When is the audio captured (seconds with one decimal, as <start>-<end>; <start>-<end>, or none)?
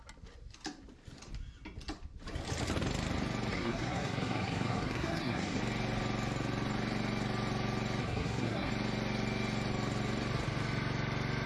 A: 0.0-3.5; 5.6-8.0; 8.7-11.5